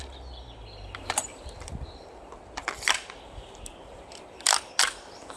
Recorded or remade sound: recorded